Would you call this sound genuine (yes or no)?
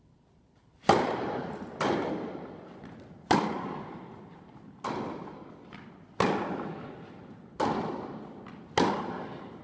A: yes